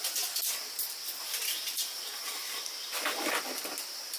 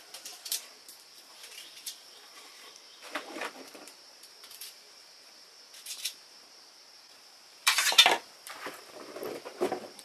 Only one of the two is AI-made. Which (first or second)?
second